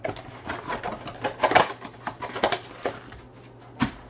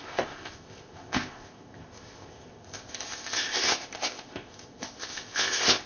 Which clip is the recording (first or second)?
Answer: first